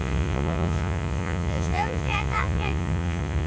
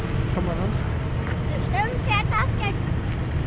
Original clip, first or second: second